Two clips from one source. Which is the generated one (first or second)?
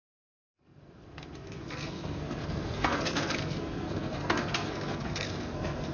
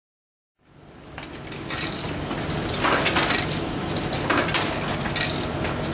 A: first